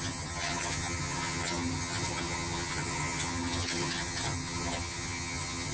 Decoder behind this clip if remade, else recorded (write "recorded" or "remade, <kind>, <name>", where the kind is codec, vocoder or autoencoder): remade, vocoder, HiFi-GAN